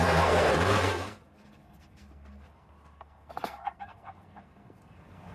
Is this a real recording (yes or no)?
no